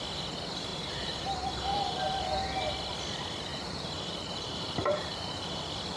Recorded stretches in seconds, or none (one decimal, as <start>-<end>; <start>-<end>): 0.0-0.7; 2.1-3.5; 5.6-6.0